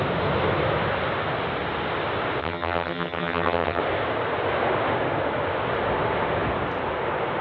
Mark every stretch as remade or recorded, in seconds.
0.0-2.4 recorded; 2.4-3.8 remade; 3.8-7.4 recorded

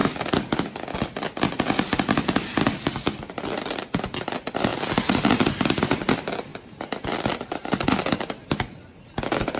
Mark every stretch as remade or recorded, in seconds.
0.0-4.7 recorded; 4.7-5.6 remade; 5.6-6.5 recorded; 6.5-8.0 remade; 8.0-9.6 recorded

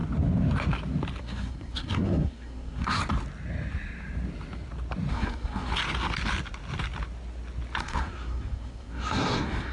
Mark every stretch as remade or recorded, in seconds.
0.0-1.2 recorded; 1.2-3.0 remade; 3.0-5.1 recorded; 5.1-5.7 remade; 5.7-7.8 recorded; 7.8-9.7 remade

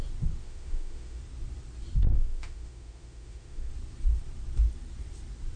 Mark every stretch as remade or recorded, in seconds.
0.0-0.4 recorded; 0.4-1.2 remade; 1.2-2.1 recorded; 2.1-3.7 remade; 3.7-5.6 recorded

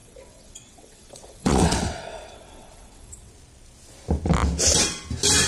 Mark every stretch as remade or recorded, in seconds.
0.0-3.3 remade; 3.3-5.5 recorded

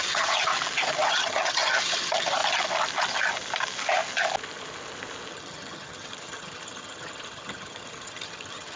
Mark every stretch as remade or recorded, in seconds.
0.0-0.5 remade; 0.5-1.1 recorded; 1.1-2.4 remade; 2.4-5.3 recorded; 5.3-8.8 remade

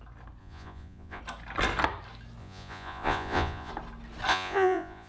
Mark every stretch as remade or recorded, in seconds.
0.0-0.4 recorded; 0.4-1.2 remade; 1.2-2.4 recorded; 2.4-3.7 remade; 3.7-4.3 recorded; 4.3-5.1 remade

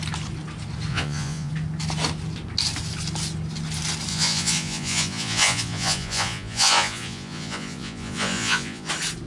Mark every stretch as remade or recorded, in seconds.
0.0-0.9 recorded; 0.9-1.5 remade; 1.5-4.1 recorded; 4.1-8.9 remade; 8.9-9.3 recorded